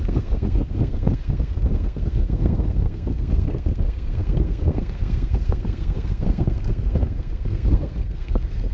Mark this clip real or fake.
fake